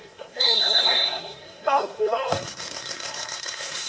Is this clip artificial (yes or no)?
yes